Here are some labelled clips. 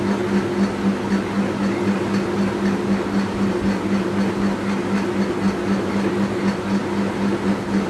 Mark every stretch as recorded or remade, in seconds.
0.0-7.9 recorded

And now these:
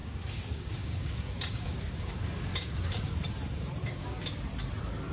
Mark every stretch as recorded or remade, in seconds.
0.0-3.1 remade; 3.1-3.8 recorded; 3.8-4.4 remade; 4.4-5.1 recorded

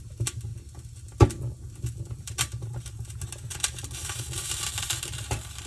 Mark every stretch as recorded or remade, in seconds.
0.0-0.5 remade; 0.5-2.2 recorded; 2.2-5.7 remade

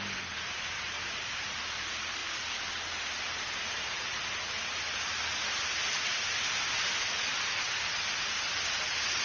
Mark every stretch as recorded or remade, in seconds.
0.0-9.2 recorded

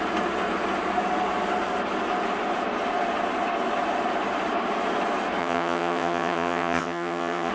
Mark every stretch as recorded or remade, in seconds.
0.0-5.4 recorded; 5.4-7.5 remade